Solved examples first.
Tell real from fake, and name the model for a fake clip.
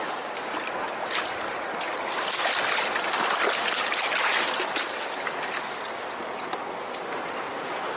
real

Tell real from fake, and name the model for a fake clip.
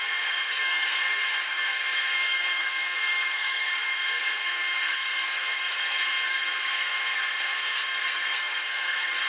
fake, codec, SNAC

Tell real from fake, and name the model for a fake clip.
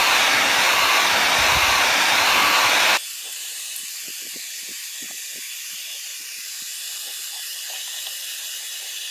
real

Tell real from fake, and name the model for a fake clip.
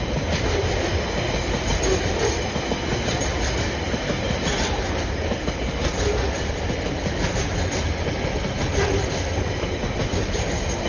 real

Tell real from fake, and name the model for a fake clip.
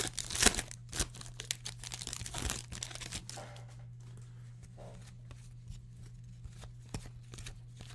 real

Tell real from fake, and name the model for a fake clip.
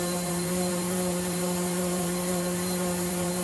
fake, vocoder, BigVGAN v2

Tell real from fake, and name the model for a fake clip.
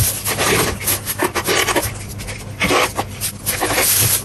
real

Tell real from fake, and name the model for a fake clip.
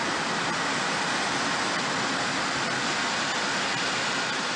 real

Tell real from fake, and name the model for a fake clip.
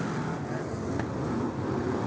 real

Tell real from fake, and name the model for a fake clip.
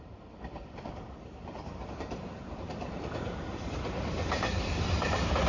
fake, vocoder, BigVGAN v2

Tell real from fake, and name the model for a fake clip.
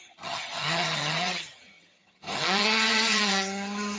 fake, vocoder, HiFi-GAN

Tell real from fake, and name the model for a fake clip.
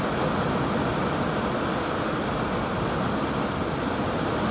real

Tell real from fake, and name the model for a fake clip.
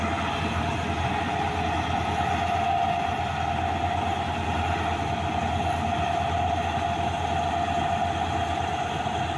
real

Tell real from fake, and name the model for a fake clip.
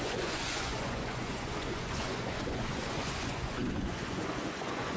fake, vocoder, Vocos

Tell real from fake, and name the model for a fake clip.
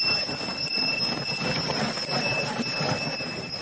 real